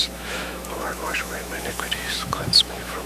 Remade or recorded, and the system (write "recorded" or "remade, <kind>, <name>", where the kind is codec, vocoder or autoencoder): remade, autoencoder, DAC-VAE